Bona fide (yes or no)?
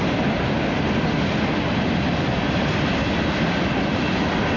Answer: no